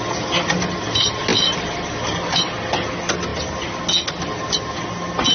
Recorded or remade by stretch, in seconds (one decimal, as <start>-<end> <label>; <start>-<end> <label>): 0.0-5.3 recorded